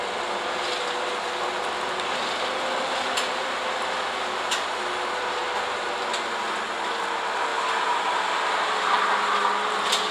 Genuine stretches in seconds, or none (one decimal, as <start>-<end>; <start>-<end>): 0.0-10.1